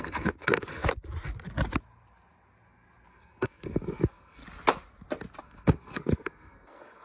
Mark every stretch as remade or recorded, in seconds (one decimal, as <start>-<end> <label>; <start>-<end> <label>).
0.0-0.8 remade; 0.8-3.1 recorded; 3.1-4.4 remade; 4.4-5.4 recorded; 5.4-7.0 remade